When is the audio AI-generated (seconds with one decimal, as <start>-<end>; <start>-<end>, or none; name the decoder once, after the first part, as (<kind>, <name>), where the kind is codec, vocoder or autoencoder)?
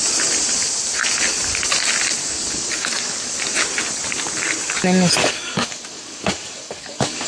2.2-3.3 (codec, DAC); 5.2-7.3